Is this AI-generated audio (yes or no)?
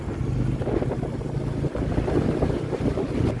no